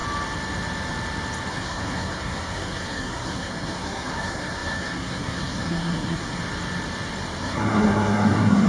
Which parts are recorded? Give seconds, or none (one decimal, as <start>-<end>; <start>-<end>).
0.0-1.5; 6.4-7.4

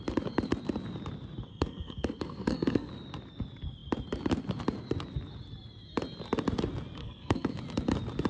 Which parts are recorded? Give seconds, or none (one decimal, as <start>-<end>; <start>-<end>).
0.0-1.5; 2.9-7.0; 7.6-8.3

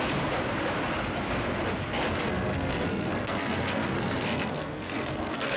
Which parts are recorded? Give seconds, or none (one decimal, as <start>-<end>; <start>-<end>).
0.0-2.2

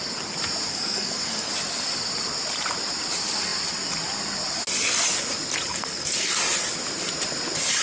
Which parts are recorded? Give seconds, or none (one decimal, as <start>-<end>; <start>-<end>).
0.0-0.7; 1.5-5.7; 6.3-7.8

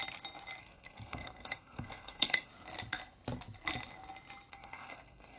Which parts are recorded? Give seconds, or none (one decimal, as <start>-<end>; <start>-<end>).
0.0-0.6; 2.5-4.5

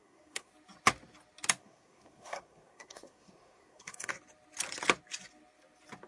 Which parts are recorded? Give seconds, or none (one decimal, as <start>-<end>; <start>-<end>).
0.5-1.6; 4.1-6.1

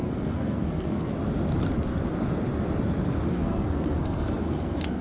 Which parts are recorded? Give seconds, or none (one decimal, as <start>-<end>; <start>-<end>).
1.1-3.3

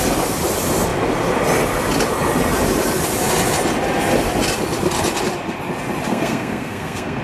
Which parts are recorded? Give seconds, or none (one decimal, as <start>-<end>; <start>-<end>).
0.0-6.1